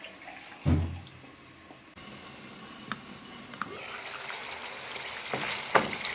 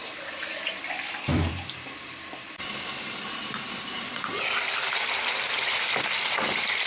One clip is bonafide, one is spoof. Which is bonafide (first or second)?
first